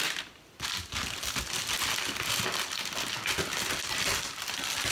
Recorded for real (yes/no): yes